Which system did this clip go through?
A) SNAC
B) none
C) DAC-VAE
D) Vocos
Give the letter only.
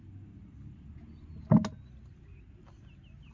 B